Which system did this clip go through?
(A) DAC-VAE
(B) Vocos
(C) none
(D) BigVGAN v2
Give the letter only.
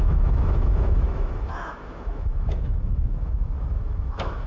A